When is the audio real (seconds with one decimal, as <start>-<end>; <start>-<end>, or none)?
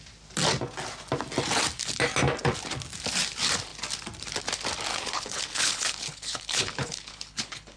0.0-4.9